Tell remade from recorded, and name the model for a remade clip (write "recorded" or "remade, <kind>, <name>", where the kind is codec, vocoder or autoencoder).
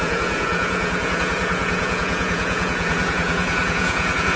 remade, vocoder, Vocos